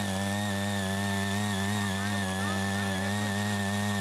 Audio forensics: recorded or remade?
recorded